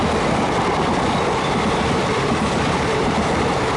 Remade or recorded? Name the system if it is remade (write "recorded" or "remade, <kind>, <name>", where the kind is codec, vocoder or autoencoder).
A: recorded